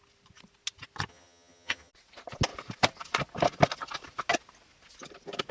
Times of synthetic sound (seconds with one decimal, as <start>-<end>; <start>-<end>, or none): 1.1-1.9